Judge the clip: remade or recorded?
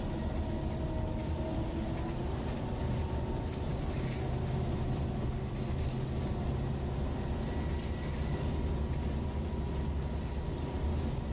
recorded